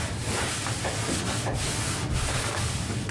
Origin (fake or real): real